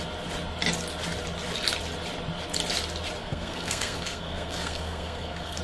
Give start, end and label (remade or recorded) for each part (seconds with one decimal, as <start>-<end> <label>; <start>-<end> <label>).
0.0-3.2 recorded; 3.2-5.6 remade